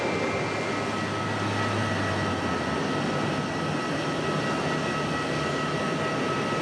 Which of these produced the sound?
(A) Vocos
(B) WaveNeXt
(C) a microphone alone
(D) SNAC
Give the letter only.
C